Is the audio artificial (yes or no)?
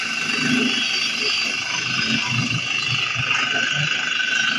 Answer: no